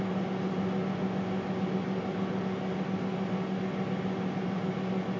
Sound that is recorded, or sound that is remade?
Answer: recorded